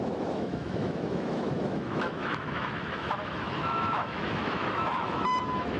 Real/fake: fake